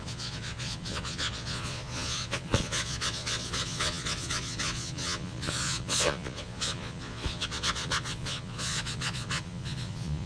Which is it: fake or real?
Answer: fake